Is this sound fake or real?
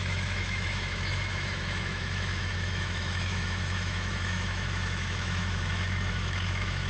fake